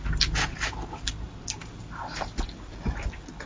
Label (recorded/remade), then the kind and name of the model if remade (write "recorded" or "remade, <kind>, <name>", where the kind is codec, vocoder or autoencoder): recorded